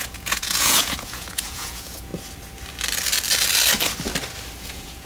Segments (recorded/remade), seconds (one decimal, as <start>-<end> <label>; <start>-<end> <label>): 0.0-2.1 remade; 2.1-4.6 recorded; 4.6-5.1 remade